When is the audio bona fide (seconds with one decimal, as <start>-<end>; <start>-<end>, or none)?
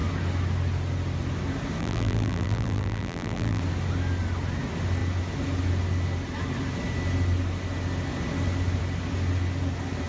0.0-1.8; 3.6-10.1